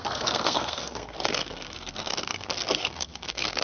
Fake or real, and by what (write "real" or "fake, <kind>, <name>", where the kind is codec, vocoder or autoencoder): fake, codec, SNAC